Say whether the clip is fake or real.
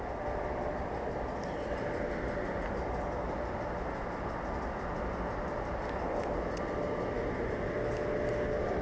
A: real